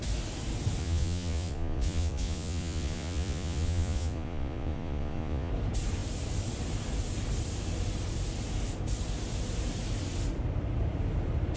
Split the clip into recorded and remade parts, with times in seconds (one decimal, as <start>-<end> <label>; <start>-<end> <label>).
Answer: 0.0-0.8 recorded; 0.8-5.5 remade; 5.5-11.6 recorded